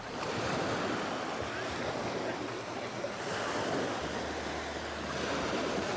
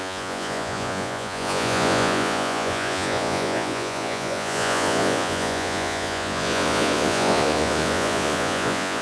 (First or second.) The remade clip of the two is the second